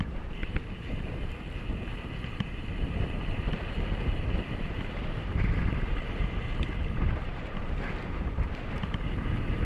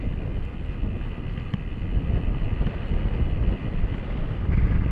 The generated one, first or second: first